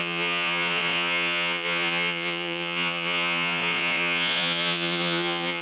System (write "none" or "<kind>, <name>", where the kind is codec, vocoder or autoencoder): vocoder, Vocos